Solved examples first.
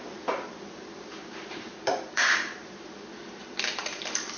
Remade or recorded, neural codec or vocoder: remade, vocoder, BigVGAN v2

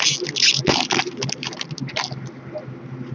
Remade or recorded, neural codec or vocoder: recorded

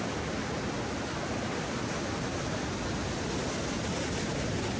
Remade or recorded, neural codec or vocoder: recorded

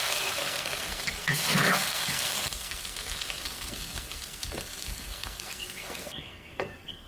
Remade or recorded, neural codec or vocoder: remade, codec, SNAC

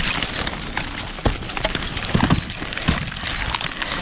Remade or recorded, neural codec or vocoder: recorded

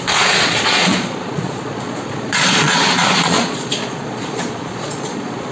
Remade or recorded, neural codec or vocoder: remade, vocoder, Vocos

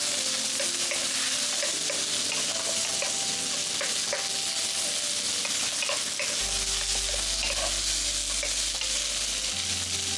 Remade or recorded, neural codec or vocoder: recorded